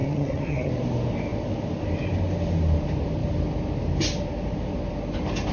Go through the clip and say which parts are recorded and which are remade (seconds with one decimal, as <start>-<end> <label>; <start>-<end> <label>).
0.0-0.7 remade; 0.7-5.5 recorded